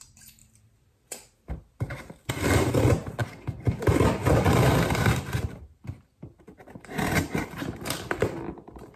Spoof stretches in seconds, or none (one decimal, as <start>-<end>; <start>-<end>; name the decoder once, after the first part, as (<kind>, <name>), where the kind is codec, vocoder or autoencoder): none